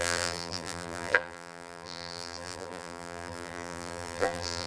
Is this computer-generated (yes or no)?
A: yes